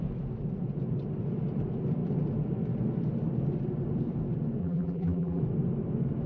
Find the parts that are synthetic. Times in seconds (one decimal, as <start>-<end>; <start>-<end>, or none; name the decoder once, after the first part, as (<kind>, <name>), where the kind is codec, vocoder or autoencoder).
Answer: 4.6-5.4 (vocoder, BigVGAN v2)